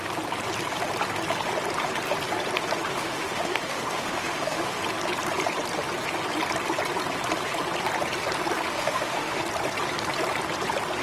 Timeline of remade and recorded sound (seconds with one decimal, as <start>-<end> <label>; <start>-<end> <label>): 0.0-2.9 recorded; 2.9-4.8 remade; 4.8-8.7 recorded; 8.7-9.4 remade; 9.4-11.0 recorded